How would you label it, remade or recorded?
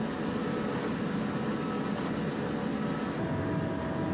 recorded